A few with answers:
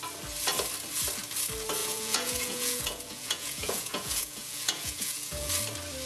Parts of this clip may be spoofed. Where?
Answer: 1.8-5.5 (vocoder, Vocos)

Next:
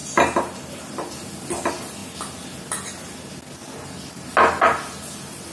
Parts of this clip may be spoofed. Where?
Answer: none